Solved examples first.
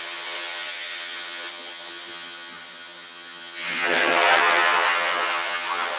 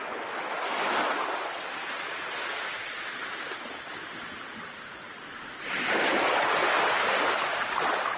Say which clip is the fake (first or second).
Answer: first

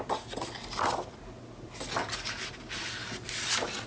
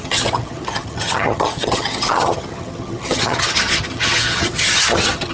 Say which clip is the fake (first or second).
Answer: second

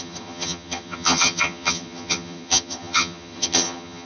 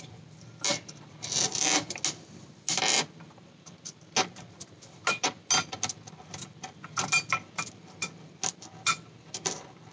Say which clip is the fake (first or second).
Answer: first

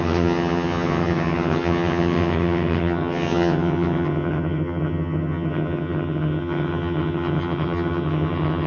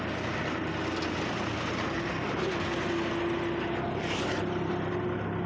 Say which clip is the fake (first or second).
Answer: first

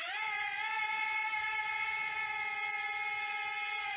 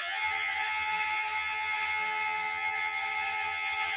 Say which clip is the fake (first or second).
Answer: second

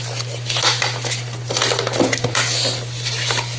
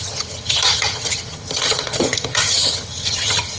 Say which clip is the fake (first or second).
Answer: second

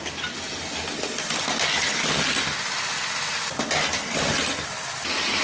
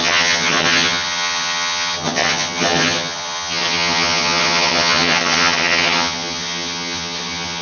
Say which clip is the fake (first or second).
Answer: second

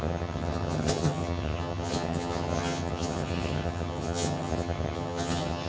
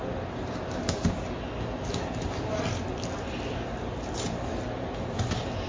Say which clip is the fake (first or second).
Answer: first